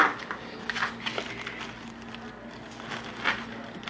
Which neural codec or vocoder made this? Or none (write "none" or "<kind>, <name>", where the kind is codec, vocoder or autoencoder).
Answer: none